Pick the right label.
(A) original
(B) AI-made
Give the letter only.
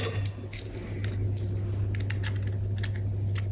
A